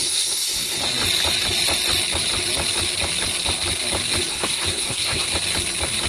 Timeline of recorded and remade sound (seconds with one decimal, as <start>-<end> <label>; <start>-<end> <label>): 0.0-0.8 remade; 0.8-4.3 recorded; 4.3-5.3 remade; 5.3-6.1 recorded